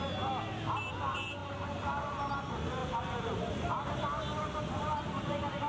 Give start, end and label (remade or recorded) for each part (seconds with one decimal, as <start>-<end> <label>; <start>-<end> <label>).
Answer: 0.0-5.7 recorded